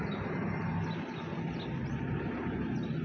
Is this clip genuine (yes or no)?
yes